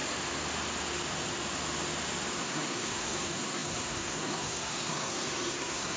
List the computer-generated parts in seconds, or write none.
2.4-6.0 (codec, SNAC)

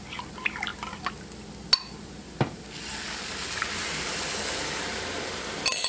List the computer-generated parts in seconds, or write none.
none

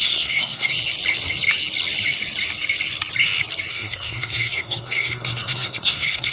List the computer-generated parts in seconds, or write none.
0.0-0.7 (codec, SNAC); 3.7-6.3

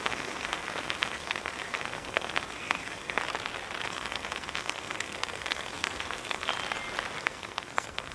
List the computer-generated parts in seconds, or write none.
0.0-3.2 (codec, SNAC); 3.8-6.5; 7.2-8.1

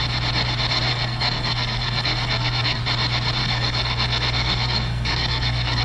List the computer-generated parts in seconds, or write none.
0.9-2.8 (codec, SNAC); 3.4-5.8

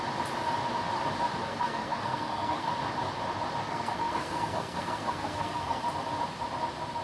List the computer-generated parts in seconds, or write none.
1.4-2.7 (codec, SNAC); 3.7-5.8

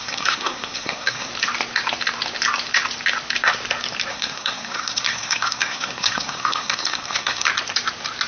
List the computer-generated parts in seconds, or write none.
0.0-1.3 (codec, SNAC); 4.1-7.5

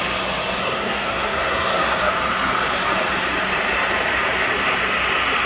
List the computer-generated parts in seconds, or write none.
0.6-2.0 (codec, SNAC)